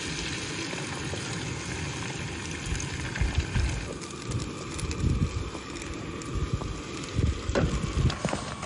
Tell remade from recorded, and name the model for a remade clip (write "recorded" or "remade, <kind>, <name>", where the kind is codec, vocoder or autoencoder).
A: recorded